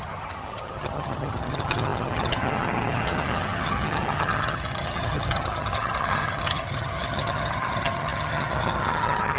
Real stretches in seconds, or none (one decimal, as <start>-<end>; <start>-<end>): none